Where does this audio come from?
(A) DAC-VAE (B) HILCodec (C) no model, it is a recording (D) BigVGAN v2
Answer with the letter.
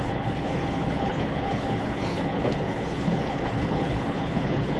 B